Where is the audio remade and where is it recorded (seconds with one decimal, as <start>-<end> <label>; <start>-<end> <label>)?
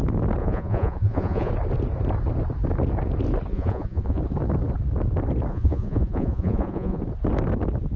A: 0.0-0.4 recorded; 0.4-1.5 remade; 1.5-3.5 recorded; 3.5-4.2 remade; 4.2-5.5 recorded; 5.5-7.0 remade; 7.0-8.0 recorded